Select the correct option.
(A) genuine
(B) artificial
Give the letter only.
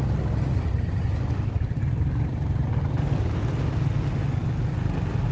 A